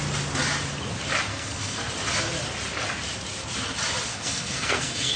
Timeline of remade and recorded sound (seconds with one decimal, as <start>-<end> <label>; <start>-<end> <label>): 0.0-1.3 recorded; 1.3-1.9 remade; 1.9-4.1 recorded; 4.1-5.2 remade